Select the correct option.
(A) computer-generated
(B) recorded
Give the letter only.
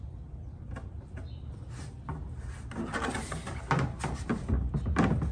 B